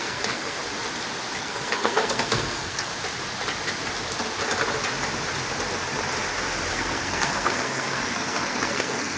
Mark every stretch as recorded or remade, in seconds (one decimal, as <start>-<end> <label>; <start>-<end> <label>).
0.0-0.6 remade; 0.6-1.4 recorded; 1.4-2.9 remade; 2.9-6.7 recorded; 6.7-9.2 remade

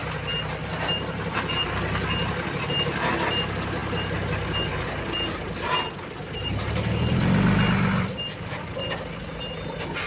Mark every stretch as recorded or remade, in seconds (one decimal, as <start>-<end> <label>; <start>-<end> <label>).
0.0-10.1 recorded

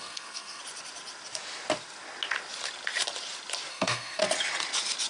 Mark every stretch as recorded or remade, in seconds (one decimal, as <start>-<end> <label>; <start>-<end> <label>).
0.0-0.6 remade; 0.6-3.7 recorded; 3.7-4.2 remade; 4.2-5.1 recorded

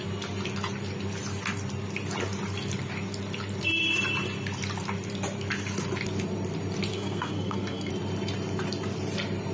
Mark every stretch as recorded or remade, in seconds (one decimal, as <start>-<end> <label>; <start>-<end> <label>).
0.0-6.9 recorded; 6.9-7.9 remade; 7.9-9.5 recorded